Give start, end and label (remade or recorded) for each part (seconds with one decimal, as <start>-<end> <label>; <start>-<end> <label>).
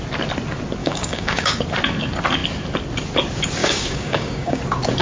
0.0-0.8 recorded; 0.8-1.6 remade; 1.6-3.6 recorded; 3.6-4.6 remade; 4.6-5.0 recorded